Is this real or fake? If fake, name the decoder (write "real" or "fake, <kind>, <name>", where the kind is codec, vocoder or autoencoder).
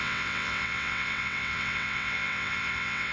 fake, vocoder, WaveNeXt